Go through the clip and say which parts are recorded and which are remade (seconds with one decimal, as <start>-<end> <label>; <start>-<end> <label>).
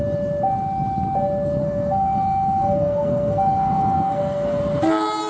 0.0-1.6 recorded; 1.6-4.6 remade; 4.6-5.3 recorded